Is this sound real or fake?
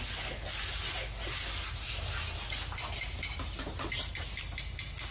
real